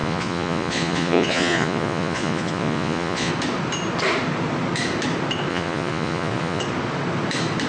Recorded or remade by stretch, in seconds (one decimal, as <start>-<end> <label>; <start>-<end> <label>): 0.0-3.3 remade; 3.3-5.5 recorded; 5.5-6.6 remade; 6.6-7.7 recorded